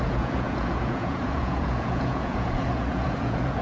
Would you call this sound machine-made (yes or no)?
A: yes